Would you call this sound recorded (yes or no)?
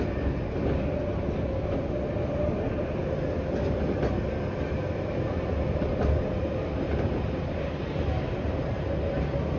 yes